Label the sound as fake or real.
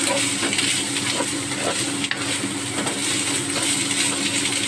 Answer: real